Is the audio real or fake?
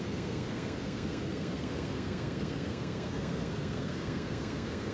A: fake